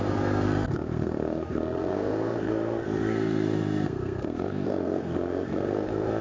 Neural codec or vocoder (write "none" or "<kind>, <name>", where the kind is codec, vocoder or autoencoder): codec, SNAC